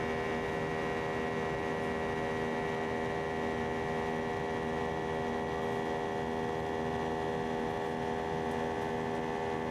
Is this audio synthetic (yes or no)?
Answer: no